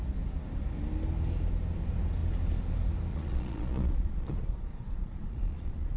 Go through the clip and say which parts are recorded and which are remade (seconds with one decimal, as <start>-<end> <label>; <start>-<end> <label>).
0.0-3.1 recorded; 3.1-6.0 remade